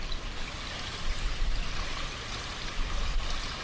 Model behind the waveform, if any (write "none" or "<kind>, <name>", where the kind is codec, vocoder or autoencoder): none